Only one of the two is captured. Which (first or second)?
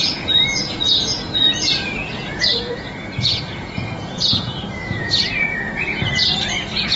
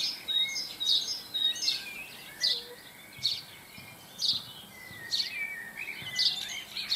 second